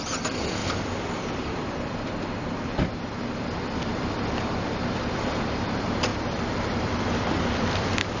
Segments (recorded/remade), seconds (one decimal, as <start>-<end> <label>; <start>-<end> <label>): 0.0-8.2 remade